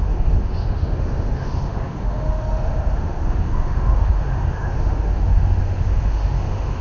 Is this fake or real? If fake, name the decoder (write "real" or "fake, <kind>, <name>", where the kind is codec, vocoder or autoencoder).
fake, autoencoder, DAC-VAE